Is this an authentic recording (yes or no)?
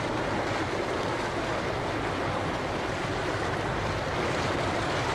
yes